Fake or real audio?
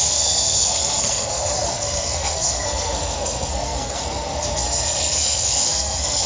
fake